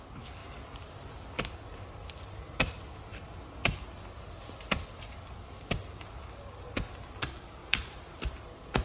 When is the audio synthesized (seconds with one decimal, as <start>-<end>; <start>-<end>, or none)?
7.6-8.2